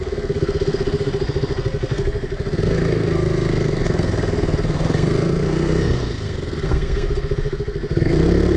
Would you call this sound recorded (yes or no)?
no